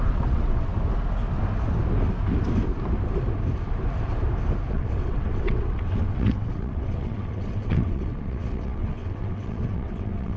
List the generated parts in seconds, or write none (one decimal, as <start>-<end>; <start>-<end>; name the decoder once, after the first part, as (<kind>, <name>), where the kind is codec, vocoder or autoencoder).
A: 0.0-0.7 (vocoder, WaveNeXt); 4.7-10.4